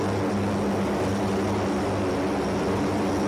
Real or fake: real